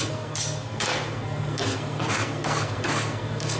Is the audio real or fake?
fake